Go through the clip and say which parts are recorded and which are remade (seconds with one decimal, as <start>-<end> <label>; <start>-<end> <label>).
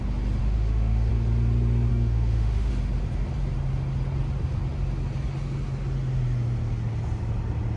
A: 0.0-0.4 recorded; 0.4-1.1 remade; 1.1-1.9 recorded; 1.9-2.7 remade; 2.7-7.8 recorded